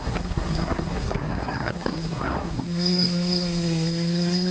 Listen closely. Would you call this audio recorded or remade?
remade